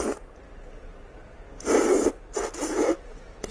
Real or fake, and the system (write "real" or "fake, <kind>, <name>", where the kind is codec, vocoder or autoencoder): real